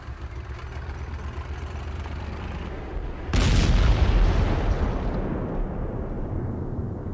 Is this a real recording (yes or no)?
yes